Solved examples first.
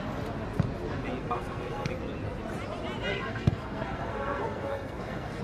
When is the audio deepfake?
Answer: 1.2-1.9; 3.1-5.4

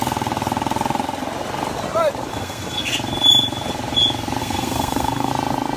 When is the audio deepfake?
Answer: 2.3-2.9; 4.4-5.3